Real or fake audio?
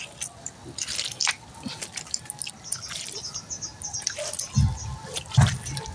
real